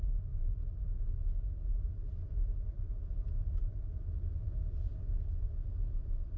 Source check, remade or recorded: recorded